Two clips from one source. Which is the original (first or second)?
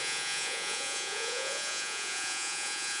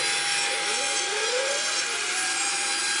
second